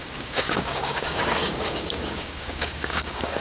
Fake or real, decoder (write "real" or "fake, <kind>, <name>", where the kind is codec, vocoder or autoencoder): fake, codec, DAC